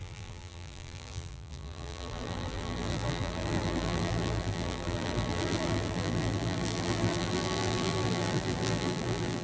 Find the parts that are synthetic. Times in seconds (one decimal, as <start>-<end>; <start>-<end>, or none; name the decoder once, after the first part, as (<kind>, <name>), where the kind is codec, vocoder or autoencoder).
0.0-9.4 (vocoder, BigVGAN v2)